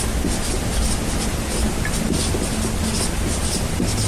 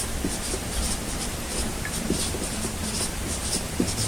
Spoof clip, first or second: second